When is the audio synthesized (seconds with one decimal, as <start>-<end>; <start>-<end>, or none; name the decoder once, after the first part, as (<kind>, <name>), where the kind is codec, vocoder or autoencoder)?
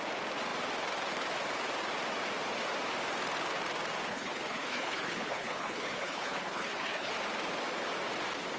4.1-7.1 (codec, HILCodec)